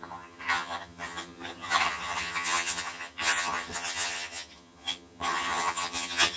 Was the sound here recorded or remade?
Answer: remade